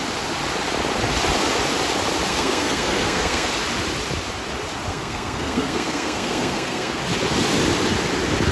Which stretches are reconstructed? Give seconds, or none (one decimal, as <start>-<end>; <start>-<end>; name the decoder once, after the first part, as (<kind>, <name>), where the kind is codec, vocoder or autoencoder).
2.3-3.5 (codec, SNAC); 4.9-7.0